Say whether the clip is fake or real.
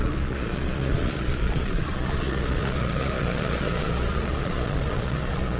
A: fake